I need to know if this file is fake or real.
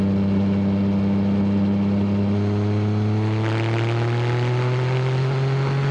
real